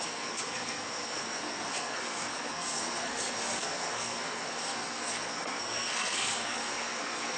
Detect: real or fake fake